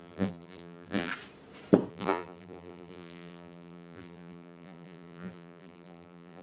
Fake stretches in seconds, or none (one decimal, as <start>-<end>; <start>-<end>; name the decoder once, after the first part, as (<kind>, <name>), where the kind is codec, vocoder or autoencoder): 0.0-1.1 (vocoder, BigVGAN v2); 1.9-6.4